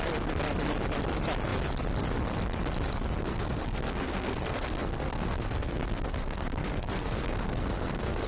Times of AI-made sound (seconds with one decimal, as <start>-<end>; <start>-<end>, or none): 3.2-8.3